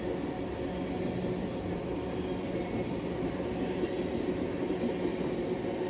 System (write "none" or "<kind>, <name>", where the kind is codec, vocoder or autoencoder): none